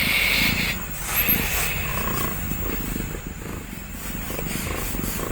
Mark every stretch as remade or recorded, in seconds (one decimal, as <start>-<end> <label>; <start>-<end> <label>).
0.0-5.3 recorded